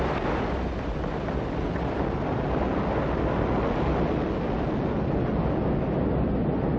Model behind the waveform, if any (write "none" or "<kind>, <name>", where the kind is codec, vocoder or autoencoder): none